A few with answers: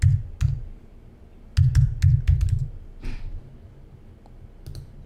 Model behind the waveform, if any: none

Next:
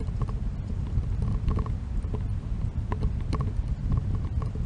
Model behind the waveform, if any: none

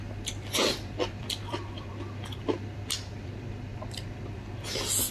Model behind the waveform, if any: vocoder, BigVGAN v2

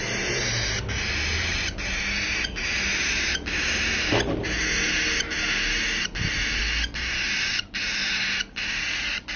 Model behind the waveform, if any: none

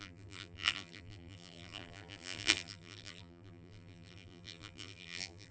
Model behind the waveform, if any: vocoder, BigVGAN v2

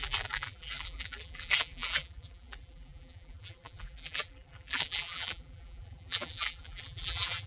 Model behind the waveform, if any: vocoder, BigVGAN v2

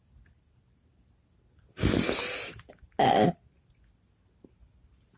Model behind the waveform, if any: none